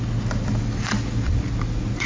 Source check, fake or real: real